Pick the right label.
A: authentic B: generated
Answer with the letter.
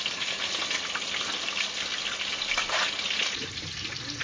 A